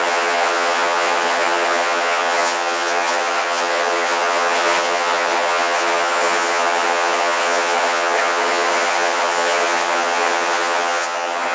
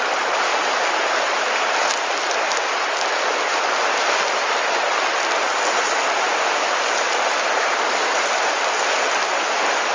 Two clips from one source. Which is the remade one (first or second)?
first